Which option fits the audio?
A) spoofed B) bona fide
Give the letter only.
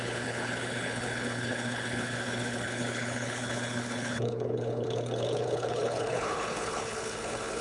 A